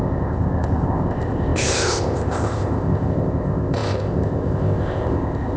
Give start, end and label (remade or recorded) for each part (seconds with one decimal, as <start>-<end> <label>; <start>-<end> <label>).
0.0-5.6 remade